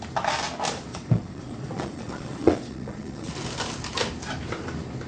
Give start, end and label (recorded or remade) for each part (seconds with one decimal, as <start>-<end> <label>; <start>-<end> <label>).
0.0-0.9 recorded; 0.9-3.3 remade; 3.3-5.1 recorded